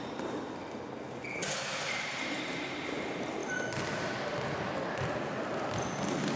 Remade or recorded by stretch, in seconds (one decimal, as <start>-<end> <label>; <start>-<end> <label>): 0.0-6.4 recorded